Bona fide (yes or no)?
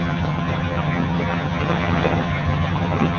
no